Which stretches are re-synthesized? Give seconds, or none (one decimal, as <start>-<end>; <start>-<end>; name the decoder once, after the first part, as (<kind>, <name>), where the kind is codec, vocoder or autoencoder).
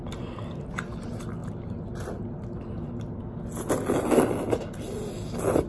none